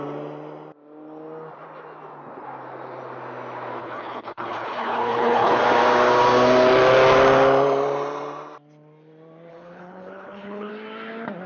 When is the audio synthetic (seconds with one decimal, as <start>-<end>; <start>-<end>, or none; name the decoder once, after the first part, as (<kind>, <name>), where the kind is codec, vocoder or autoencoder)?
3.8-5.6 (codec, HILCodec); 9.5-10.7